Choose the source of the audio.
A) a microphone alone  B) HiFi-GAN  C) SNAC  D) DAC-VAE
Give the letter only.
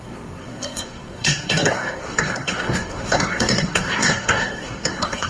C